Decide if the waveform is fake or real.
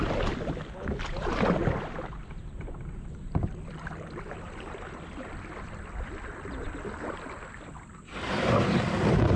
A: fake